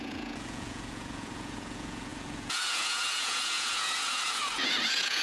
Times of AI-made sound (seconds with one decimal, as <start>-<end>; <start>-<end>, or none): 0.0-5.2